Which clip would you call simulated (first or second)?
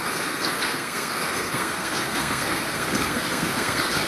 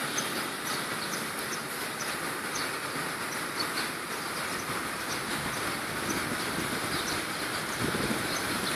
first